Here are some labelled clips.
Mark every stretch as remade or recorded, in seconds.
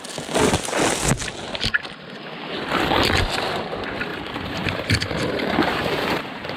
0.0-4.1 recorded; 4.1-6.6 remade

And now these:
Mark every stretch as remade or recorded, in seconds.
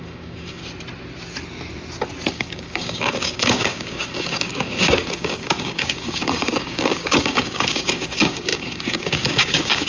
0.0-0.6 remade; 0.6-2.3 recorded; 2.3-9.9 remade